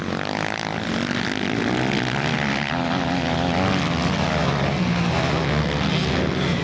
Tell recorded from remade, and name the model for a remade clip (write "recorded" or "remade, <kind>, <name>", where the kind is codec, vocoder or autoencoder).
recorded